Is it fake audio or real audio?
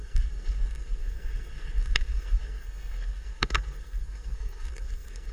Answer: fake